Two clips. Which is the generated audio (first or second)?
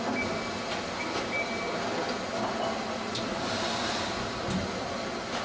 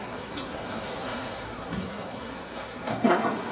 second